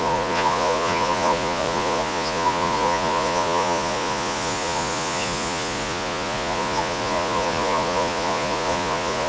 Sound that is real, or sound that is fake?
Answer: fake